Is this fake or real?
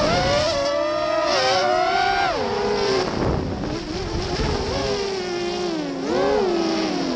real